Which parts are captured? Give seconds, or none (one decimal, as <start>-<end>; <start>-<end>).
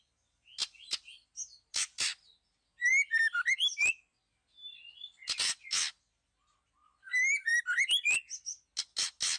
0.0-6.8; 7.5-9.4